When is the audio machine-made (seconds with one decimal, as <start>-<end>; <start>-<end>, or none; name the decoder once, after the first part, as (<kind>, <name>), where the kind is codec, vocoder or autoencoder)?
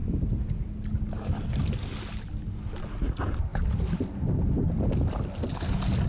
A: none